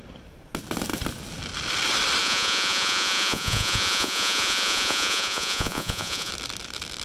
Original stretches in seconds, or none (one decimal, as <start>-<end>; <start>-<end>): 0.0-2.2; 6.3-7.0

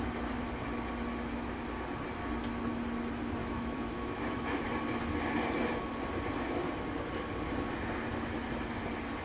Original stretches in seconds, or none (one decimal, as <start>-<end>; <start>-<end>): 0.0-3.4; 4.6-9.2

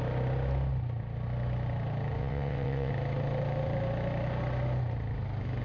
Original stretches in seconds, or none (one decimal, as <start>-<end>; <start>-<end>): 0.0-2.2; 2.9-5.6

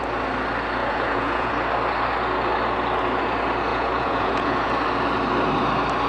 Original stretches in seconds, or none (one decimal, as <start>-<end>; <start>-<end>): 0.0-0.8; 1.5-3.7; 4.7-6.1

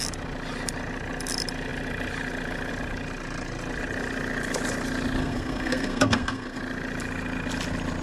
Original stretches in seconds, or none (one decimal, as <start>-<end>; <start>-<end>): 0.0-5.2; 6.6-8.0